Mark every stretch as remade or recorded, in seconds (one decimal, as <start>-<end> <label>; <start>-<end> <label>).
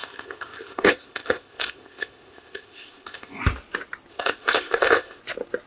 0.0-3.4 remade; 3.4-4.1 recorded; 4.1-5.2 remade; 5.2-5.7 recorded